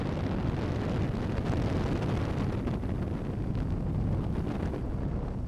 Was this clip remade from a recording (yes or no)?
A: no